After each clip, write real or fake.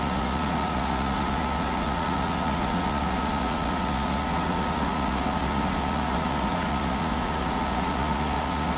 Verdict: fake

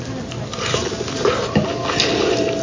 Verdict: real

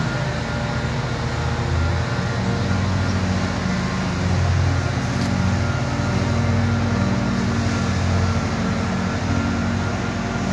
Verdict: real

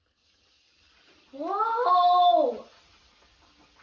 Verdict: real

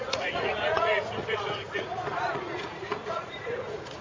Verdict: fake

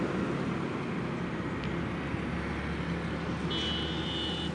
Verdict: real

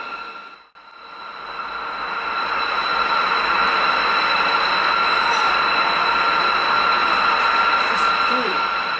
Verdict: real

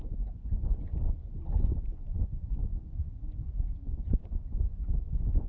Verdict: fake